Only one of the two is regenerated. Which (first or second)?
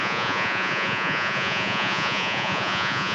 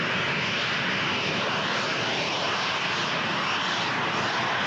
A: first